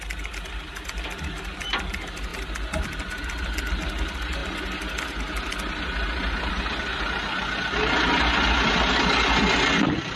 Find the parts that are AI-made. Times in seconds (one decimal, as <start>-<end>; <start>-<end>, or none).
none